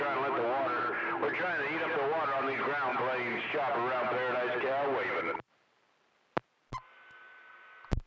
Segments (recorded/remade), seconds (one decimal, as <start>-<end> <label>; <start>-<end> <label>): 0.0-8.1 recorded